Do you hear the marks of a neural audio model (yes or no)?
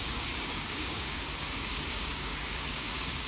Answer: yes